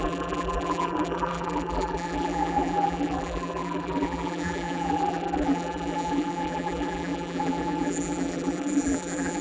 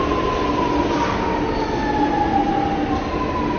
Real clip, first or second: second